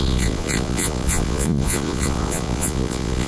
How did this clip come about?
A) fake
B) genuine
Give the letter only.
A